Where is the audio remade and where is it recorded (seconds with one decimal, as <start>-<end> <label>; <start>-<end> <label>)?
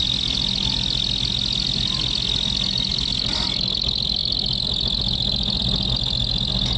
0.0-6.8 recorded